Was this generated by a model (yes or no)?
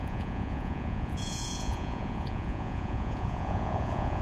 yes